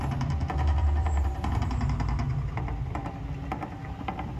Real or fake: real